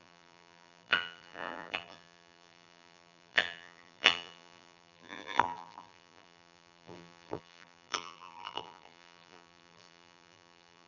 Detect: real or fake fake